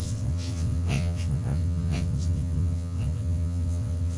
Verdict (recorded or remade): remade